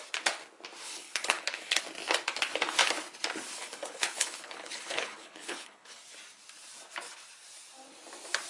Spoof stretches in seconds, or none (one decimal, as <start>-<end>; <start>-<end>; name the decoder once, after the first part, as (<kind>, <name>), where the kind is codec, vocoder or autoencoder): 0.8-1.8 (codec, HILCodec); 3.5-6.0